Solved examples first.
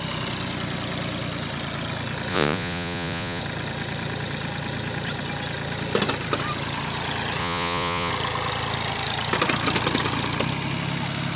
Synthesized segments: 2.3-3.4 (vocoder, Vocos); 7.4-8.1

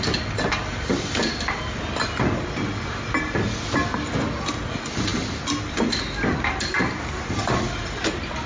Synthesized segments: none

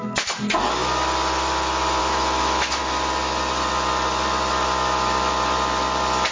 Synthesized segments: 2.0-2.8 (autoencoder, DAC-VAE)